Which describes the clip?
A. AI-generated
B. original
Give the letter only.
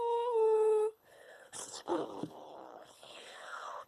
A